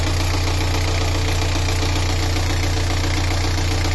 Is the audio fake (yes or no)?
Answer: no